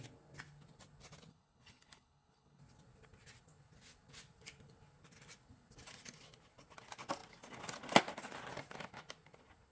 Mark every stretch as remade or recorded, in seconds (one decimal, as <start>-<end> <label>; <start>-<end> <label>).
0.0-1.3 recorded; 1.3-2.6 remade; 2.6-9.7 recorded

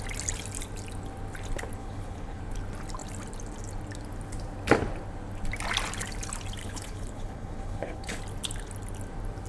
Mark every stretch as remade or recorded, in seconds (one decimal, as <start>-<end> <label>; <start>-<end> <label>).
0.0-1.8 recorded; 1.8-2.4 remade; 2.4-6.6 recorded; 6.6-8.2 remade; 8.2-9.5 recorded